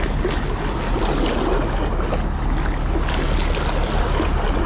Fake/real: real